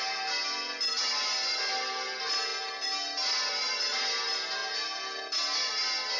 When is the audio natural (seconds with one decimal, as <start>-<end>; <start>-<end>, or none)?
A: 0.0-6.2